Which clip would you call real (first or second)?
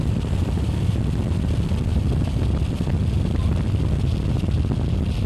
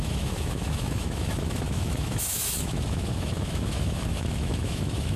first